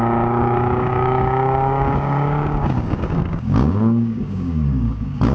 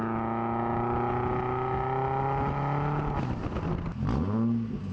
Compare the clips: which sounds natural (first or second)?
second